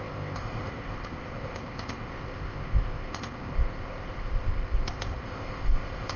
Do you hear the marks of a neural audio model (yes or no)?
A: yes